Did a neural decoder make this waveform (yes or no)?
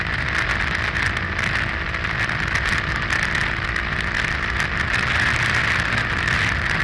no